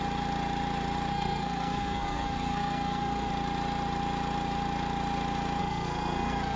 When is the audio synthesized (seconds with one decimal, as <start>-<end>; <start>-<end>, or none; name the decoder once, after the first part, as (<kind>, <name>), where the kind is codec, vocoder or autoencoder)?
1.1-3.3 (codec, SNAC); 5.6-6.6